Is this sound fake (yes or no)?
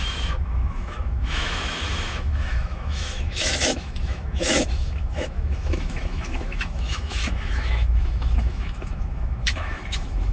yes